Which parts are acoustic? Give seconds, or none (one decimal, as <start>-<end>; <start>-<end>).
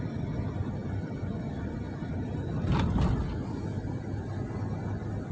0.0-5.3